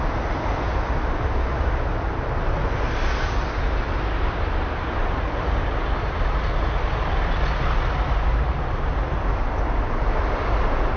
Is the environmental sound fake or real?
real